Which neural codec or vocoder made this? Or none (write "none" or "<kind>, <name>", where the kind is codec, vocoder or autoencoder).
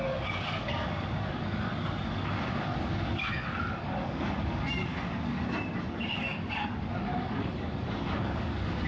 codec, DAC